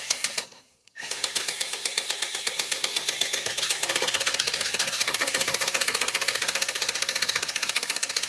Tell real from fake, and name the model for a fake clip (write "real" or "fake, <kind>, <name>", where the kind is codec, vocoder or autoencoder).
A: fake, codec, SNAC